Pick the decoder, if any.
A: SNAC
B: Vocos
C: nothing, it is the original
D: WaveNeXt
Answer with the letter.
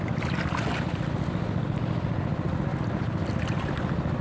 C